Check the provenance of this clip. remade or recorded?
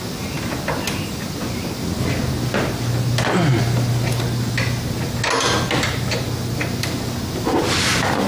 recorded